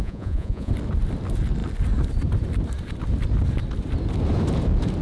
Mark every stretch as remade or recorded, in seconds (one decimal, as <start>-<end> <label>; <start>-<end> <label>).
0.0-0.7 remade; 0.7-5.0 recorded